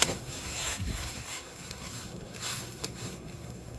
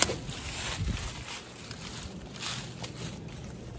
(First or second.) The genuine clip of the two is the second